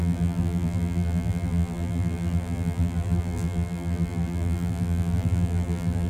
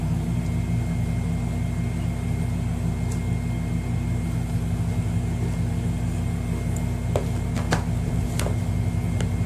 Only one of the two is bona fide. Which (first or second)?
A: second